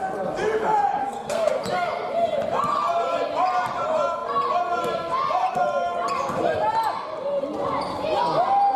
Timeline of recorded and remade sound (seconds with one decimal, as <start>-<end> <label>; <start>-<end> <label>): 0.0-1.0 recorded; 1.0-1.5 remade; 1.5-8.8 recorded